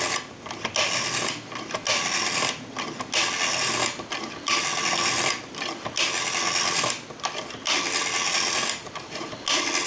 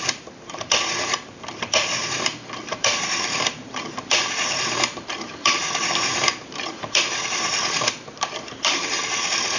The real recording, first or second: first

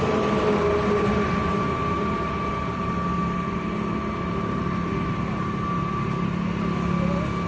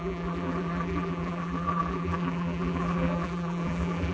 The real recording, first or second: first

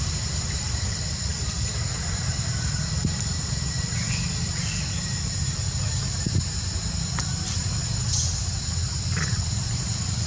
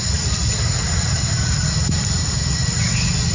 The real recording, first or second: second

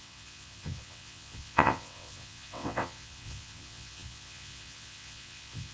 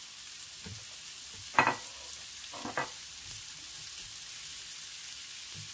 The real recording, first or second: second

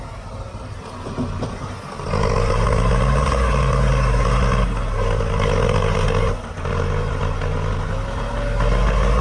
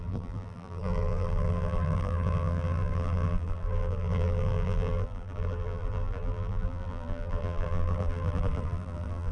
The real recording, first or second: first